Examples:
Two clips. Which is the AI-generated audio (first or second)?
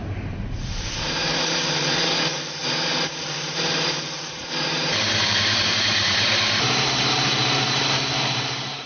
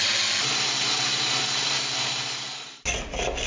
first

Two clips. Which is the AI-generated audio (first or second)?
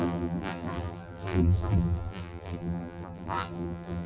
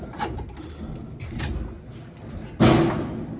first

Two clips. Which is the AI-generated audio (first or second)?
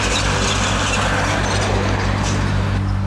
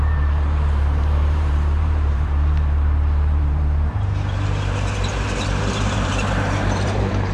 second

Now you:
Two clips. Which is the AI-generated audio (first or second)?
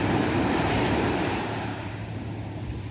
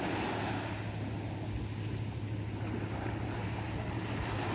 first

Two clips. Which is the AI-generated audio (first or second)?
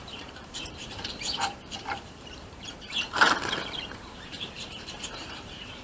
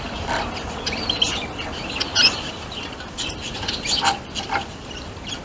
first